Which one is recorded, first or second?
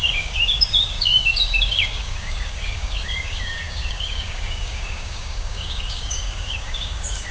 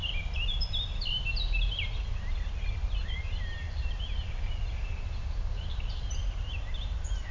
second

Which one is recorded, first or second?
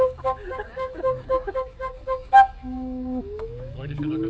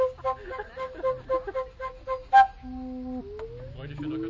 second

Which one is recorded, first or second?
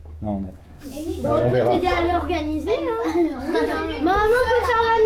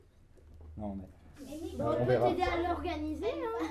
second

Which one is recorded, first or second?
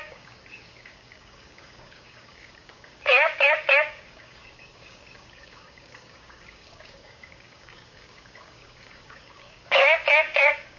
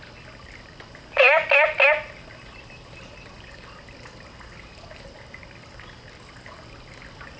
second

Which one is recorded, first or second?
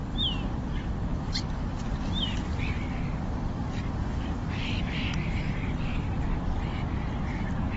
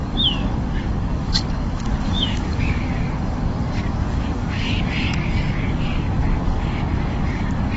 first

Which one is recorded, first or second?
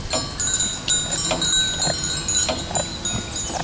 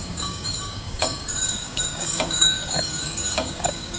first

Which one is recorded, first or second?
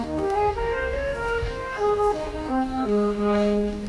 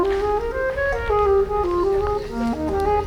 second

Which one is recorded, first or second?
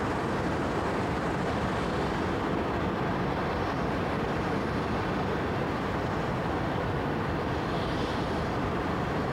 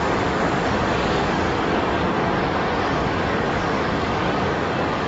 first